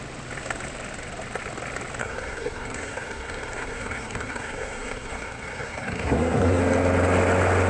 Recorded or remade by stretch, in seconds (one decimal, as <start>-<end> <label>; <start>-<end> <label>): 0.0-2.0 recorded; 2.0-6.6 remade; 6.6-7.7 recorded